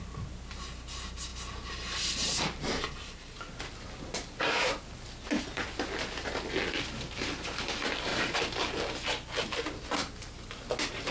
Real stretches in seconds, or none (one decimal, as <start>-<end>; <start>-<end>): 0.0-11.1

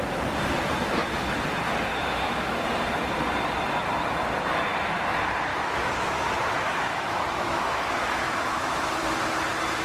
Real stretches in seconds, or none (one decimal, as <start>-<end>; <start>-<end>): 0.0-1.9; 2.6-5.5; 8.9-9.8

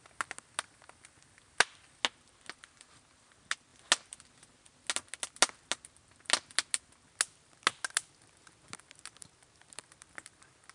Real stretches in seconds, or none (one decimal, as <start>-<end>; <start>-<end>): 0.0-10.7

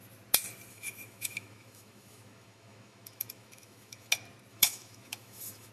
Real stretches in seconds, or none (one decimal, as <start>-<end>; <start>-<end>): 0.0-0.7; 4.1-4.5